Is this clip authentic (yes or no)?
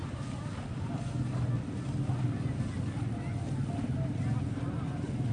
yes